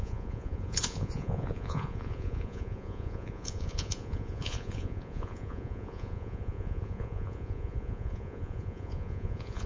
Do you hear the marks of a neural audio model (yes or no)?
yes